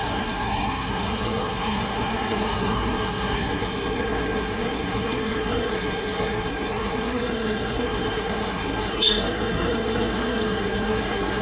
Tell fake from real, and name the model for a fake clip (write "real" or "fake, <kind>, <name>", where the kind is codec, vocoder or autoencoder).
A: fake, codec, SNAC